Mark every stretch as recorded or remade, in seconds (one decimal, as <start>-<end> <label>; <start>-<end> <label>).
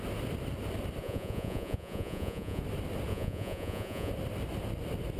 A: 0.0-1.0 recorded; 1.0-2.6 remade; 2.6-3.1 recorded; 3.1-4.1 remade; 4.1-5.2 recorded